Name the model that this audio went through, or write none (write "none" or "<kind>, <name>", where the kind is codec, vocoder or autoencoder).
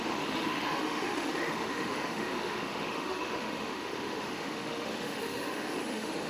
autoencoder, DAC-VAE